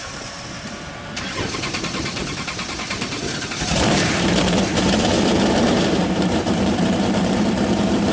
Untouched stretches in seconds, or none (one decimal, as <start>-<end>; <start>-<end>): none